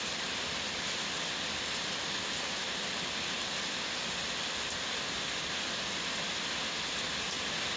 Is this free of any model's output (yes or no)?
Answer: yes